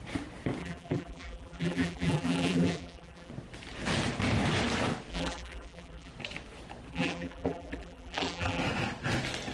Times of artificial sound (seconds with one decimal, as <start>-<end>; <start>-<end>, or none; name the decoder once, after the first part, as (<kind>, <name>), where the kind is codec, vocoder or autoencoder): 0.6-3.3 (vocoder, BigVGAN v2); 5.1-6.1; 6.9-8.6